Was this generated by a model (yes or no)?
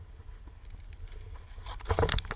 no